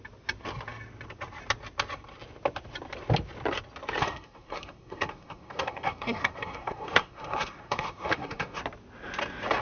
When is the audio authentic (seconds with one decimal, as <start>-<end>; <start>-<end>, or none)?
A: 0.0-4.0; 8.6-9.6